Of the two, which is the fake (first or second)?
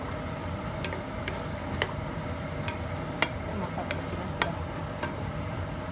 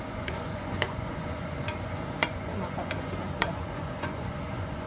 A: second